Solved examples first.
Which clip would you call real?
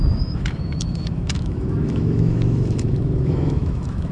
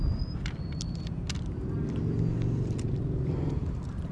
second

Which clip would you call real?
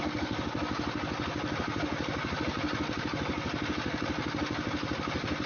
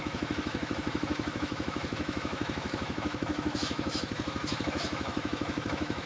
first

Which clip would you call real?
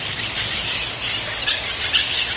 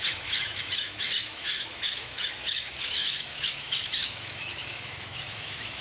first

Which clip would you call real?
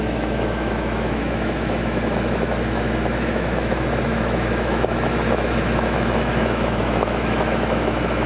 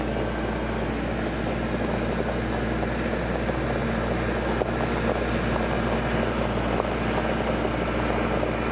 second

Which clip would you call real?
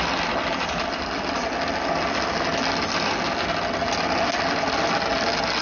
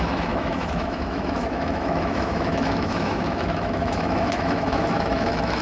first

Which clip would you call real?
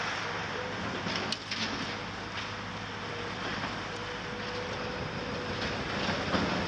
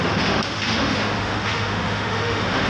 first